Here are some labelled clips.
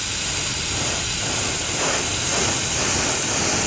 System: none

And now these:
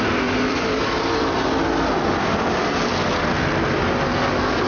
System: none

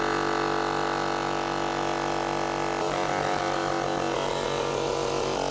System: none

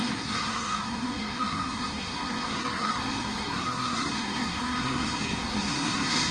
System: codec, SNAC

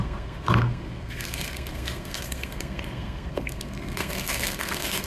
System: codec, SNAC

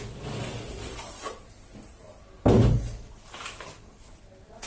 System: none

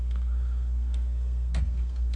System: codec, SNAC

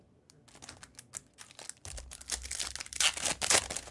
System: none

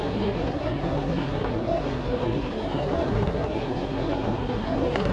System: codec, SNAC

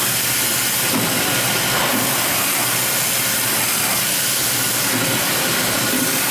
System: none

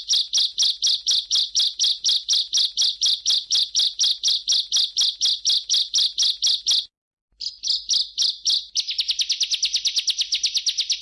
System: none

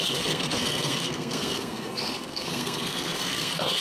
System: codec, SNAC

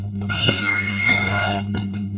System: codec, SNAC